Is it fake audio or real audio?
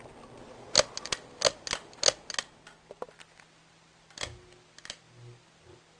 real